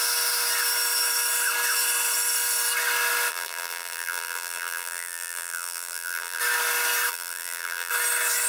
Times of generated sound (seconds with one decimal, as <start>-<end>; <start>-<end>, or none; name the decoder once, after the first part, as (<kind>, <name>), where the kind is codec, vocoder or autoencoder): 3.3-6.4 (vocoder, BigVGAN v2); 7.1-7.9